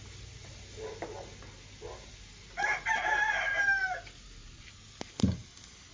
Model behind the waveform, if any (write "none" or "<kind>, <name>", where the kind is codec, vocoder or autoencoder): none